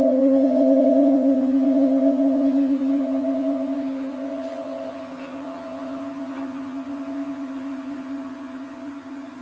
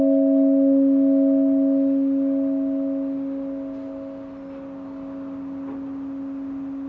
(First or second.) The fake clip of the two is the first